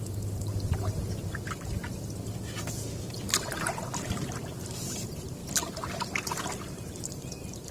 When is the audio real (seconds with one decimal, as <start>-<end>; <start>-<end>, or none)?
5.4-6.2